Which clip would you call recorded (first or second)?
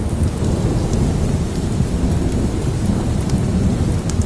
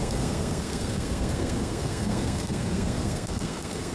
first